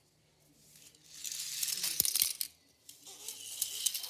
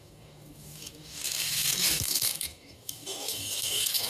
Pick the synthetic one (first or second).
second